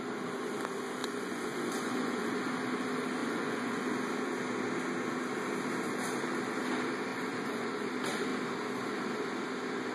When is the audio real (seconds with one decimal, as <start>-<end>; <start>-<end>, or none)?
0.0-1.0; 2.3-3.2; 3.8-7.1; 7.7-9.9